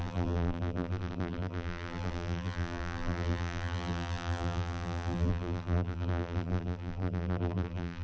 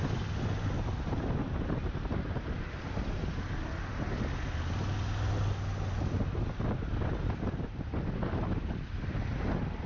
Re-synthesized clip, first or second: first